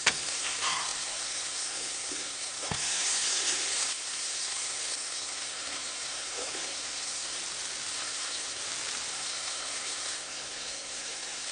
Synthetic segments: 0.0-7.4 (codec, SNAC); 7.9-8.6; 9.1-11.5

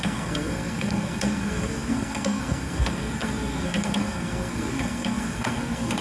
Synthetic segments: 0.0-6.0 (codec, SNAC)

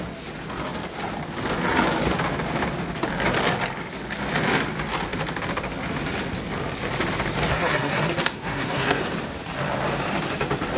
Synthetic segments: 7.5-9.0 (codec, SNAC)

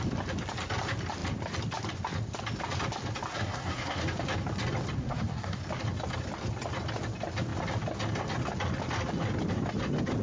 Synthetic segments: 3.3-4.0 (codec, SNAC); 5.0-5.6

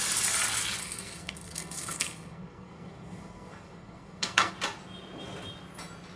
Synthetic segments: 0.8-4.5 (codec, SNAC)

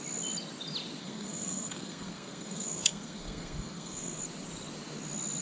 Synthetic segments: 1.0-4.2 (codec, SNAC)